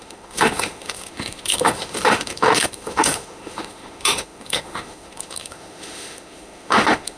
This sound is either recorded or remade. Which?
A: remade